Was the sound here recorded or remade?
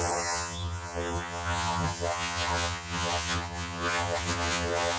remade